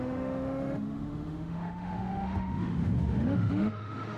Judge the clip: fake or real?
fake